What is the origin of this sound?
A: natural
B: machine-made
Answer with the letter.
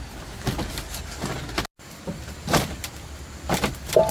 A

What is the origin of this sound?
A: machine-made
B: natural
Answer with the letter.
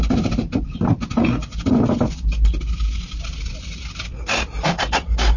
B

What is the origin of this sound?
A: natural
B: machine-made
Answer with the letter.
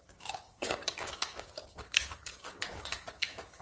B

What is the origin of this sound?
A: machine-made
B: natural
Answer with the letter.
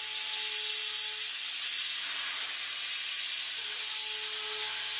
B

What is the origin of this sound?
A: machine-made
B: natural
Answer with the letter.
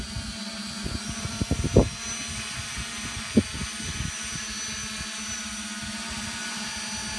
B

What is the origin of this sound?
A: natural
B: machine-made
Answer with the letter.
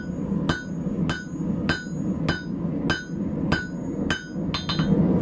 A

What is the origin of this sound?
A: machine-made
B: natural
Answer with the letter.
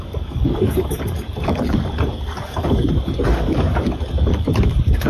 A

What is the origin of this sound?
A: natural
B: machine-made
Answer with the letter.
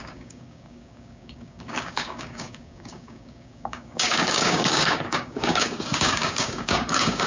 B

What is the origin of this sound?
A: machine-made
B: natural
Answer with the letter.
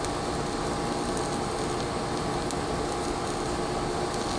B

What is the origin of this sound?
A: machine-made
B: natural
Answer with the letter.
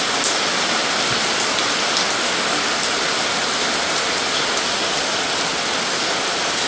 B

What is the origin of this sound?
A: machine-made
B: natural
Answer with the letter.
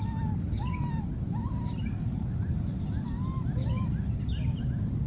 B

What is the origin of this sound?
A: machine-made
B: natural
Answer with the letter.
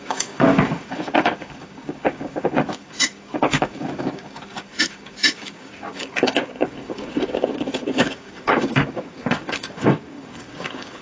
A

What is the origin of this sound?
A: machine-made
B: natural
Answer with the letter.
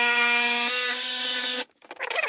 A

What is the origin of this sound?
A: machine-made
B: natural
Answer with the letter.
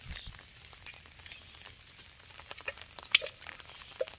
B